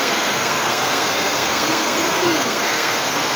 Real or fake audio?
fake